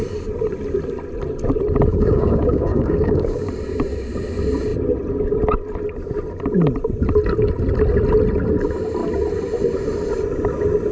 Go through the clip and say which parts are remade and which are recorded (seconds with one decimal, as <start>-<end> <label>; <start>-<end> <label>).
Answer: 0.0-1.9 recorded; 1.9-3.5 remade; 3.5-10.9 recorded